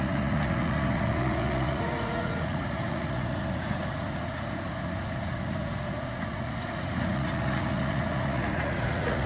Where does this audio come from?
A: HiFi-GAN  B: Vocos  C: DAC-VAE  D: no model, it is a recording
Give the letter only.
B